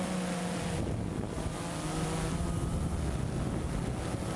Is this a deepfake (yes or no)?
no